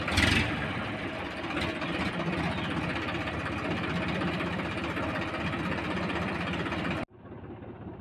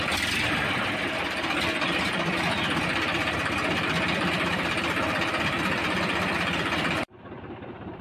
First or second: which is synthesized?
second